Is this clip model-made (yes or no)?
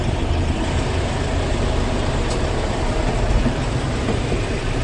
yes